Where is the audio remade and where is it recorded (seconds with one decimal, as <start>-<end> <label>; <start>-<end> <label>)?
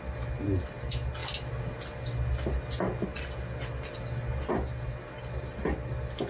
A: 0.0-6.3 recorded